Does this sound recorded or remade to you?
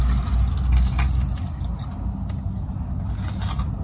recorded